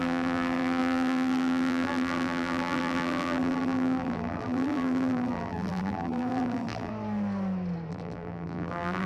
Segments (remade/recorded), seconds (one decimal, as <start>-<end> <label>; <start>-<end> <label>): 0.0-6.9 remade; 6.9-7.9 recorded; 7.9-9.1 remade